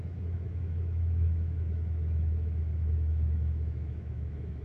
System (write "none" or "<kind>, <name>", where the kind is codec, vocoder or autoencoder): autoencoder, DAC-VAE